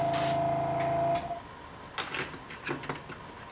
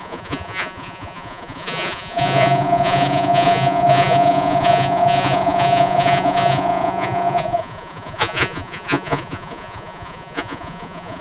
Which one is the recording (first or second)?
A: first